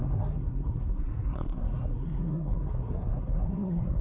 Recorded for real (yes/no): no